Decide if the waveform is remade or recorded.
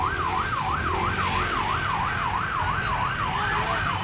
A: recorded